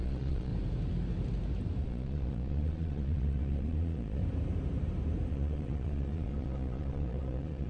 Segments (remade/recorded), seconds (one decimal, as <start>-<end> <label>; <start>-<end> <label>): 0.0-0.5 remade; 0.5-1.8 recorded; 1.8-4.2 remade; 4.2-5.3 recorded; 5.3-7.7 remade